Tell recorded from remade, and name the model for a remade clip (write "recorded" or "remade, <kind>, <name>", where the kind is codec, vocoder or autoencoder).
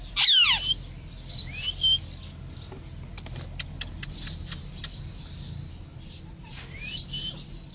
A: recorded